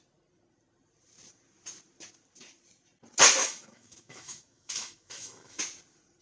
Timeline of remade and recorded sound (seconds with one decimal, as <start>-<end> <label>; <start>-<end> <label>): 0.0-3.4 recorded; 3.4-5.6 remade; 5.6-6.2 recorded